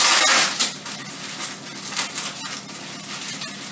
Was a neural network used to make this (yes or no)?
no